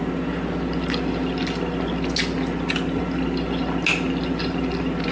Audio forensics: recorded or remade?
recorded